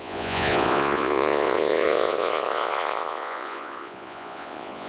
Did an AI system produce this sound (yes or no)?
yes